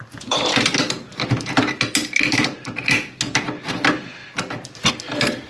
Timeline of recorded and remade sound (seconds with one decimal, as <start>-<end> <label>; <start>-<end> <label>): 0.0-5.5 recorded